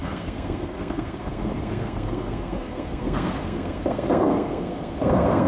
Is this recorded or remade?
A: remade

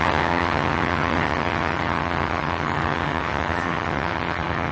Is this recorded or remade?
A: remade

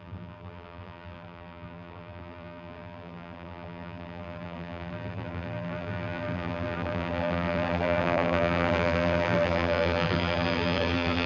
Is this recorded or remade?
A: remade